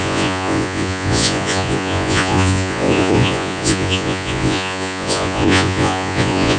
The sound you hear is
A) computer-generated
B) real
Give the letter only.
A